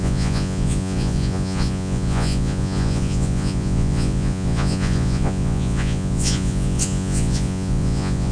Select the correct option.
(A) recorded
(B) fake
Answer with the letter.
B